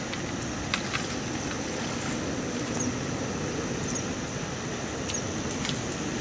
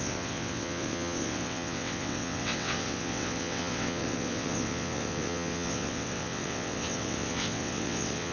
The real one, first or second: first